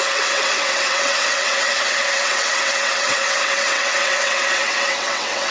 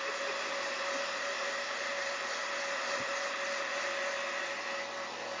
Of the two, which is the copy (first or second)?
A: first